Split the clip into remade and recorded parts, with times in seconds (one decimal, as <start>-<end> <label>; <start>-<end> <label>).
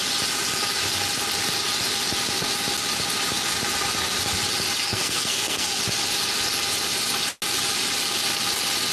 0.0-4.9 recorded; 4.9-5.8 remade; 5.8-8.9 recorded